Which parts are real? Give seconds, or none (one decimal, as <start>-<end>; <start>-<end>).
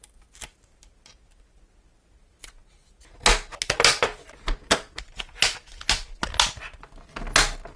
0.0-7.8